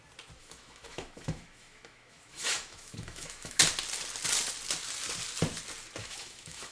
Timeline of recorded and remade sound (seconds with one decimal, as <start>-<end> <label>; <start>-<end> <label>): 0.0-0.4 recorded; 0.4-3.6 remade; 3.6-6.0 recorded; 6.0-6.7 remade